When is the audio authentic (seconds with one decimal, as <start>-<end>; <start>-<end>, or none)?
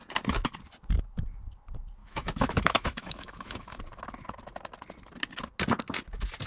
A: 0.0-2.0; 3.8-6.5